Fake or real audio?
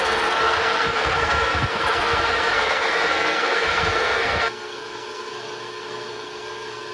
fake